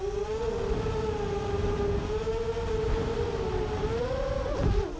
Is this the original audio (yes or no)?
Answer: yes